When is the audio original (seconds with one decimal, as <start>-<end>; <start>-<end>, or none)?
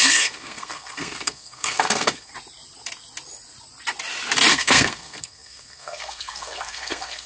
2.3-4.5